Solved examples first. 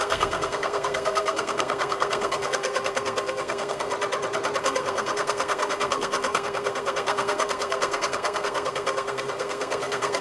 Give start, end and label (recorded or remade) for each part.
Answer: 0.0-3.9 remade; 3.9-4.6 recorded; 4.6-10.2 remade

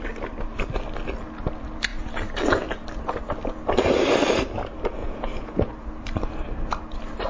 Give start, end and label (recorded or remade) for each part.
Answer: 0.0-5.0 recorded; 5.0-5.7 remade; 5.7-7.3 recorded

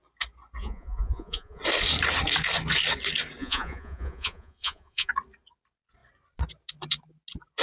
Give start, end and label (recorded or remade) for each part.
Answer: 0.0-0.6 recorded; 0.6-1.6 remade; 1.6-3.4 recorded; 3.4-5.1 remade; 5.1-7.6 recorded

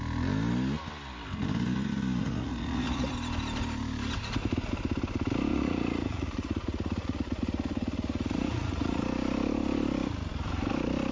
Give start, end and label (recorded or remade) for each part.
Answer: 0.0-2.2 recorded; 2.2-3.1 remade; 3.1-5.5 recorded; 5.5-9.0 remade; 9.0-11.1 recorded

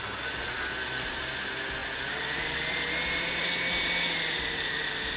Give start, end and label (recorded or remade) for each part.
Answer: 0.0-5.2 recorded

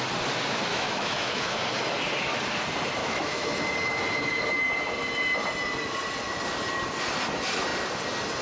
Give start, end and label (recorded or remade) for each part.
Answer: 0.0-0.7 recorded; 0.7-1.6 remade; 1.6-3.0 recorded; 3.0-3.6 remade; 3.6-8.4 recorded

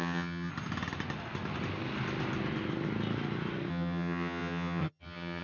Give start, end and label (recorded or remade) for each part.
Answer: 0.0-0.5 remade; 0.5-3.7 recorded; 3.7-5.4 remade